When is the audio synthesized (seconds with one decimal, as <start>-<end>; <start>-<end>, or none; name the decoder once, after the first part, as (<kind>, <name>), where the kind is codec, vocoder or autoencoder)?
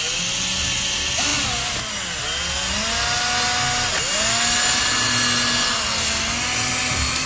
none